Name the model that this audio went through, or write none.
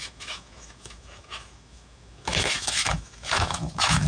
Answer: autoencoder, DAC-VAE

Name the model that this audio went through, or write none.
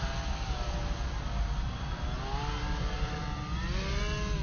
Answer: none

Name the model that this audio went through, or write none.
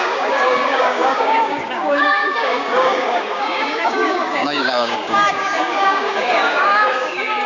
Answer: codec, DAC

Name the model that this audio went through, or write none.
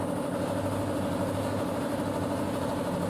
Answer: none